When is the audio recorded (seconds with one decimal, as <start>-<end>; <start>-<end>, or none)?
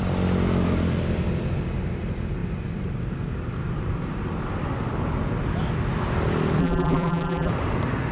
0.0-6.6; 7.5-8.1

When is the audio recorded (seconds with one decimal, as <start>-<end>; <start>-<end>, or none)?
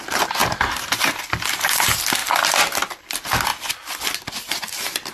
0.0-0.4; 1.2-5.1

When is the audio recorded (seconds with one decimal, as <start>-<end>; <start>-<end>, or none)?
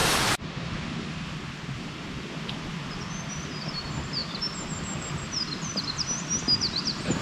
4.2-6.4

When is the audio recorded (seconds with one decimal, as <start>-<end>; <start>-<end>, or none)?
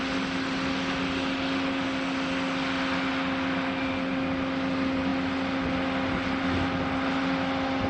0.0-7.9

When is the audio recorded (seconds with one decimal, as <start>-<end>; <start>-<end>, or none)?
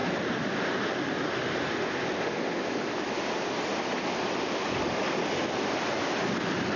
1.1-6.8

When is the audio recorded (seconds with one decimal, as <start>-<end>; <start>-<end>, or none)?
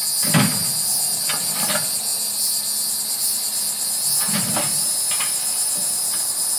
0.0-6.6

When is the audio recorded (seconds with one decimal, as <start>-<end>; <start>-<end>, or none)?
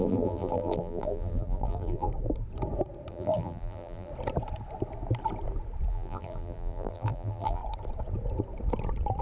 2.1-3.1; 4.1-5.9; 7.6-9.2